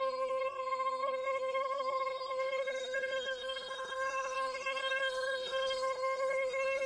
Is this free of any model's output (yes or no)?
no